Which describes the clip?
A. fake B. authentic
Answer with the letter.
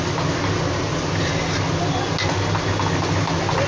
B